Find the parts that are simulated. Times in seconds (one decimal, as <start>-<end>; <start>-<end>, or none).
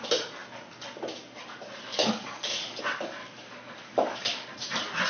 1.9-2.8; 3.2-4.5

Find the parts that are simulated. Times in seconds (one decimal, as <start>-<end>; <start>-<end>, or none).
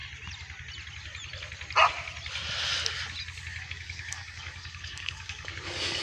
3.6-6.0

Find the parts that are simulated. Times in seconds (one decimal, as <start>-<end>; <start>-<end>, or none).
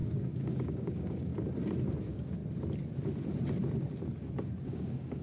0.0-1.3; 2.0-2.4; 4.6-5.2